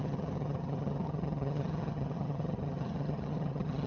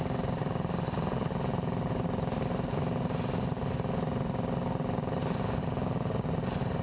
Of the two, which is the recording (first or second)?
second